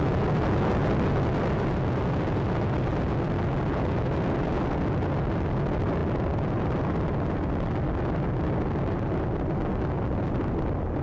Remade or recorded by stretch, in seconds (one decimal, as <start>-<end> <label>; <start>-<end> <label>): 0.0-11.0 recorded

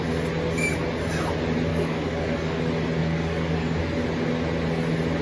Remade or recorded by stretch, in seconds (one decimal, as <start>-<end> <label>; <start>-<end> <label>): 0.0-1.7 recorded; 1.7-2.6 remade; 2.6-3.0 recorded; 3.0-3.8 remade; 3.8-5.2 recorded

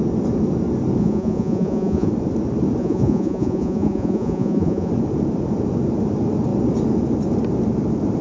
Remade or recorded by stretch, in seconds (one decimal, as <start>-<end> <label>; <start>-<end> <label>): 0.0-1.0 recorded; 1.0-2.1 remade; 2.1-2.8 recorded; 2.8-4.9 remade; 4.9-8.2 recorded

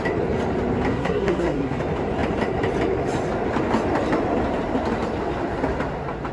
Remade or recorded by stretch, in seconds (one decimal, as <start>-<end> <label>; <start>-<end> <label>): 0.0-0.9 recorded; 0.9-1.8 remade; 1.8-6.3 recorded

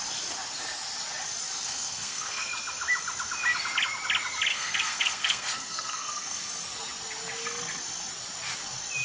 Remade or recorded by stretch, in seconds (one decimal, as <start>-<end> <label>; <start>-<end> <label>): 0.0-1.6 recorded; 1.6-2.5 remade; 2.5-4.5 recorded; 4.5-6.5 remade; 6.5-9.0 recorded

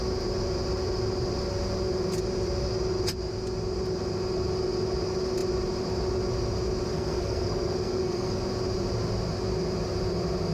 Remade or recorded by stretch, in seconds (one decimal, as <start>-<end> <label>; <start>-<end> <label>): 0.0-6.9 recorded; 6.9-8.4 remade; 8.4-10.5 recorded

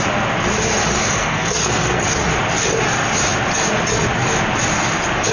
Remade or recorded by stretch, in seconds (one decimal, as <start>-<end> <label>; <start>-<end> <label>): 0.0-1.0 recorded; 1.0-2.2 remade; 2.2-5.3 recorded

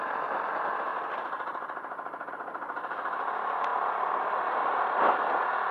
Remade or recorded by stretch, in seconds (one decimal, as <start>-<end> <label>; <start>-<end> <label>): 0.0-5.7 recorded